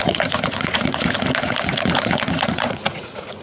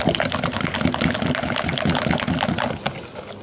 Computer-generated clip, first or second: first